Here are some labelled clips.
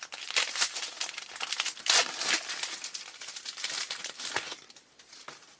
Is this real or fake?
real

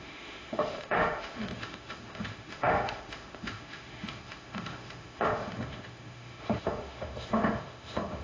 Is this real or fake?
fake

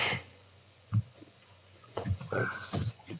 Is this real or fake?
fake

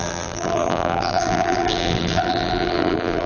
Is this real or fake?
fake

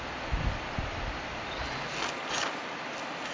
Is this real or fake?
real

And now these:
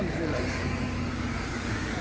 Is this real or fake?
fake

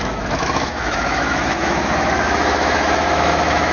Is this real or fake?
fake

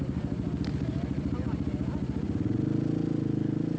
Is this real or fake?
real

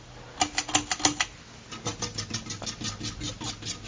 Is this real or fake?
real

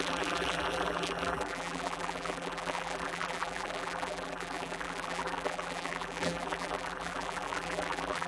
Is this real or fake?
fake